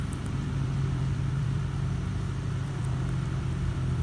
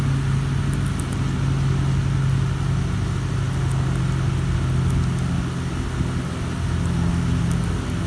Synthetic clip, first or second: first